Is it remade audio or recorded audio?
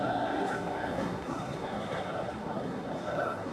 remade